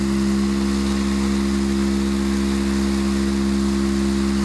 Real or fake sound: real